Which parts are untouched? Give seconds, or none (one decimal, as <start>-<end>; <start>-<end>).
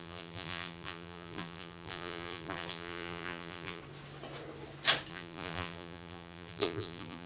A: 3.8-5.1